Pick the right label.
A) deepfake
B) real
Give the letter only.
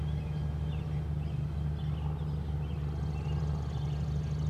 B